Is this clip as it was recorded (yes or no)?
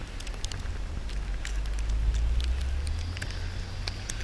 yes